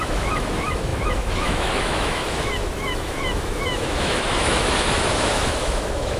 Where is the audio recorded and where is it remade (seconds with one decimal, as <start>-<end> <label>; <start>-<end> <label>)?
0.0-6.2 remade

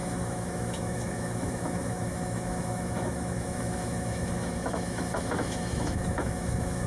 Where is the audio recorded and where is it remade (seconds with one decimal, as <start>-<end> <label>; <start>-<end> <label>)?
0.0-6.9 remade

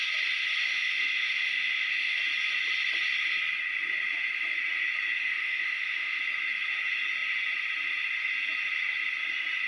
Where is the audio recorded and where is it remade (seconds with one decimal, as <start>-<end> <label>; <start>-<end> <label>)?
0.0-0.6 recorded; 0.6-2.2 remade; 2.2-5.2 recorded; 5.2-6.2 remade; 6.2-9.7 recorded